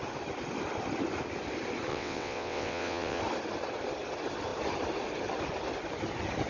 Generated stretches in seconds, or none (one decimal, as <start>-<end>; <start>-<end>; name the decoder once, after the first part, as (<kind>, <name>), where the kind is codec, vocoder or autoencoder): 1.9-3.2 (vocoder, WaveNeXt)

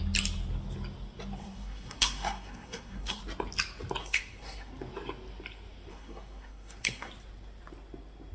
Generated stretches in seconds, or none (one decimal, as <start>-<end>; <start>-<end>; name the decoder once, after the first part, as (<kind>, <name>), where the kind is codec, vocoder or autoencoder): 1.4-3.2 (codec, SNAC); 4.0-4.7; 5.9-7.1

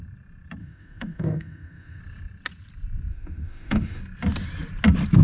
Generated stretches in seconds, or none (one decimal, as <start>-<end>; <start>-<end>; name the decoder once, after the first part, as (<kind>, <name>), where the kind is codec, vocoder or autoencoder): 0.6-2.0 (autoencoder, DAC-VAE); 3.1-4.0

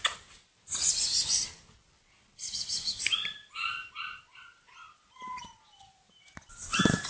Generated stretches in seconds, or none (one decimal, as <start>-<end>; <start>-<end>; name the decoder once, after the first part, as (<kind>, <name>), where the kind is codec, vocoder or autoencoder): none

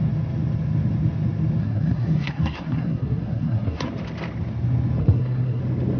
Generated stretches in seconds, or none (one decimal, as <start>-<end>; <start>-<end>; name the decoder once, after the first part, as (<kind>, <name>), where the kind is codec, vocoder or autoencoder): 1.6-3.9 (codec, SNAC); 5.0-5.6